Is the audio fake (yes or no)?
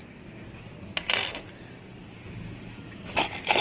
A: no